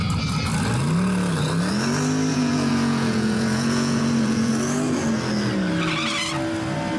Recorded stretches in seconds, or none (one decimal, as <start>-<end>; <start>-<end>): 0.0-2.3; 4.5-7.0

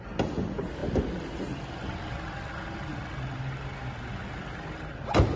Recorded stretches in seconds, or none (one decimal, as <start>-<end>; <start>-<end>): 0.0-5.4

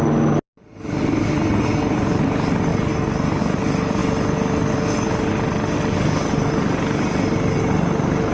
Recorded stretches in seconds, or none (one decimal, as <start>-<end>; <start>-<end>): 0.0-8.3

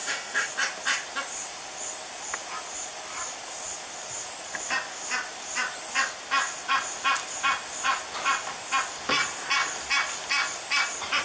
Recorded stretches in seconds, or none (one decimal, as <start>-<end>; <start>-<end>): 0.5-11.2

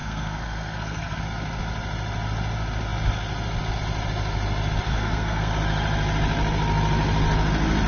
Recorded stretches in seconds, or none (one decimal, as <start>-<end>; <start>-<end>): 1.2-4.9; 5.5-7.9

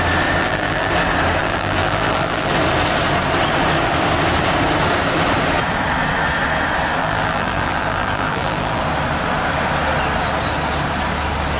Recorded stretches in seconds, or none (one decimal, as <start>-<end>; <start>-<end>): 0.0-0.4; 0.9-1.4; 2.5-7.0; 8.8-11.6

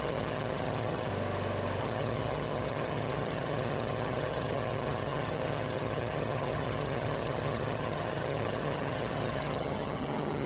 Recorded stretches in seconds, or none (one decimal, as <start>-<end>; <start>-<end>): 1.1-1.8

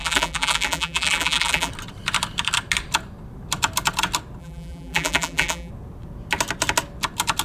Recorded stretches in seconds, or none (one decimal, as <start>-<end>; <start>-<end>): 1.7-4.4; 5.7-7.4